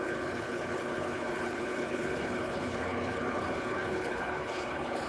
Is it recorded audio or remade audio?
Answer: remade